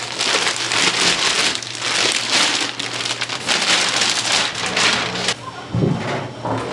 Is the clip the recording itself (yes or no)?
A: yes